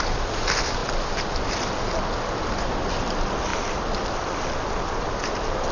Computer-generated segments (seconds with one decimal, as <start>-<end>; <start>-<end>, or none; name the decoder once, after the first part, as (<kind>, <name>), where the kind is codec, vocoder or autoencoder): none